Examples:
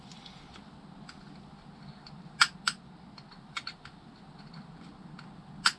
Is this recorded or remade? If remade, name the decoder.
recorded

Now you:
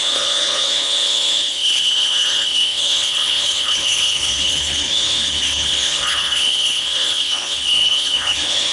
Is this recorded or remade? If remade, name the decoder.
remade, codec, HILCodec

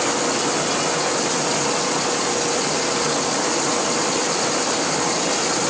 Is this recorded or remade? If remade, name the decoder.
recorded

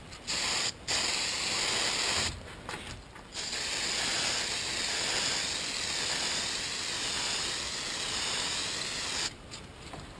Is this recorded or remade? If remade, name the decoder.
recorded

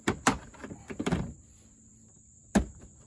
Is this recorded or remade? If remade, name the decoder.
remade, vocoder, BigVGAN v2